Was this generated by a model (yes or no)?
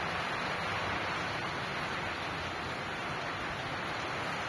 no